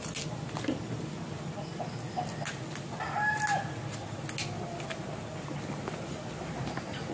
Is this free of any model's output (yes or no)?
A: yes